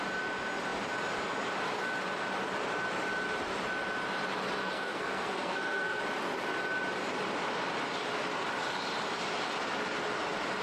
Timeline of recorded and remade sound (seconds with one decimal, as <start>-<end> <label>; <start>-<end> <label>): 0.0-4.6 recorded; 4.6-6.0 remade; 6.0-10.6 recorded

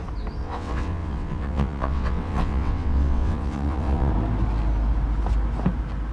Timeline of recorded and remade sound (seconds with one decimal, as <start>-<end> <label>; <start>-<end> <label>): 0.0-0.4 recorded; 0.4-4.1 remade; 4.1-6.1 recorded

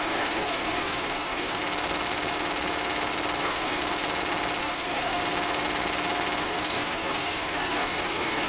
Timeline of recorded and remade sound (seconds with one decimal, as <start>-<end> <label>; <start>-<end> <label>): 0.0-1.6 remade; 1.6-3.4 recorded; 3.4-3.8 remade; 3.8-4.6 recorded; 4.6-5.2 remade; 5.2-6.4 recorded; 6.4-8.5 remade

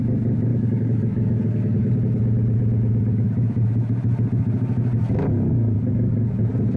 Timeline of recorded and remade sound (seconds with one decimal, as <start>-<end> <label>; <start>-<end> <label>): 0.0-0.5 recorded; 0.5-2.0 remade; 2.0-5.5 recorded; 5.5-6.3 remade; 6.3-6.8 recorded

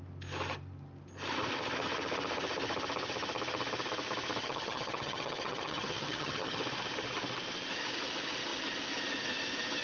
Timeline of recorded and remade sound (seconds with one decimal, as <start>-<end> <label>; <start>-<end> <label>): 0.0-4.4 recorded; 4.4-6.6 remade; 6.6-9.8 recorded

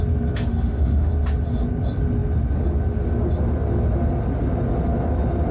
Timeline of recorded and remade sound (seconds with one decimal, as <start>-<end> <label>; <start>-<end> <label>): 0.0-0.5 recorded; 0.5-1.1 remade; 1.1-5.5 recorded